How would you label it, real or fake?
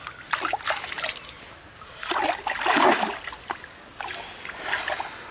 real